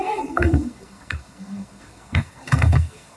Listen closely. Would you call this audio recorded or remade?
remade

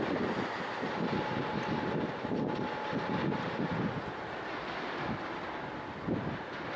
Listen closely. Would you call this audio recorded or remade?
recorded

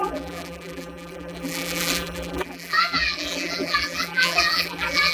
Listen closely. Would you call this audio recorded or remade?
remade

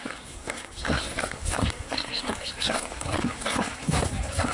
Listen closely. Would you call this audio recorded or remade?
remade